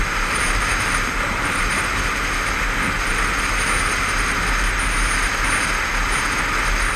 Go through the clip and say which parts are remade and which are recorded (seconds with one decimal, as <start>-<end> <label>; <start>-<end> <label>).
0.0-1.7 remade; 1.7-7.0 recorded